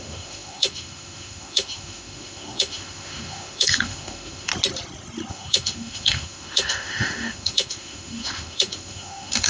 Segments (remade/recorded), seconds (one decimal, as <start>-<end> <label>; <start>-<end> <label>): 0.0-4.5 remade; 4.5-5.3 recorded; 5.3-9.5 remade